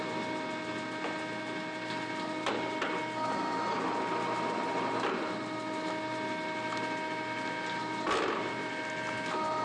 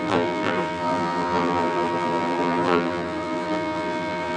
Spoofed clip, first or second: second